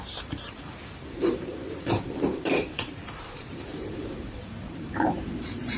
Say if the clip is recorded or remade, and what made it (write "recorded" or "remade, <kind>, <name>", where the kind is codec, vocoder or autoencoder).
remade, vocoder, BigVGAN v2